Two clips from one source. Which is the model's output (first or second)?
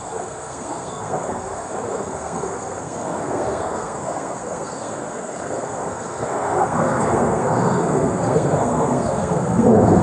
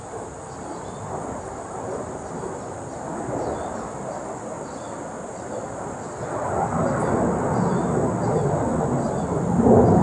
first